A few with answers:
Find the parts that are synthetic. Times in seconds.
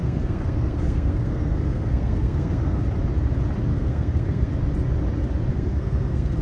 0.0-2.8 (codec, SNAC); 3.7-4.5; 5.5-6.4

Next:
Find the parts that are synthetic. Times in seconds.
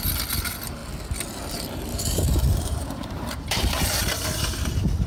1.9-4.0 (vocoder, BigVGAN v2)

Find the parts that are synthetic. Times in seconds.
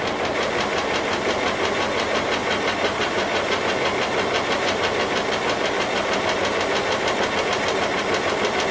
none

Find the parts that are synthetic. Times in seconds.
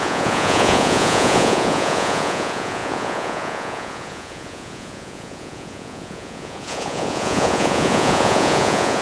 0.0-9.0 (vocoder, Vocos)